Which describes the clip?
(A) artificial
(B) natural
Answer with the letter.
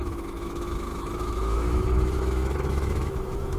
A